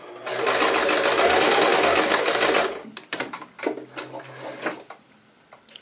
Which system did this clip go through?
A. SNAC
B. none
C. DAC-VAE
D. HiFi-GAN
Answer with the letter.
B